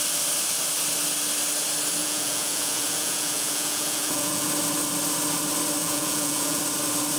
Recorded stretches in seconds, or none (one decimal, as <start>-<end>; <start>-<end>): 0.0-2.0; 4.5-5.8; 6.6-7.2